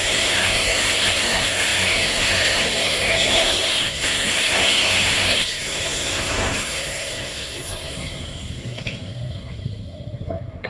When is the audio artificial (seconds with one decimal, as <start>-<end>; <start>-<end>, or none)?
0.0-10.7